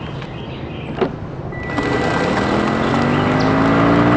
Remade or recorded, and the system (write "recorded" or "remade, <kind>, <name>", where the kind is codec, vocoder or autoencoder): recorded